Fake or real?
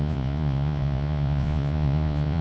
fake